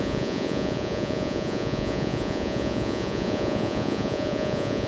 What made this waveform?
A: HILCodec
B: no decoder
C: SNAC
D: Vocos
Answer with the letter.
D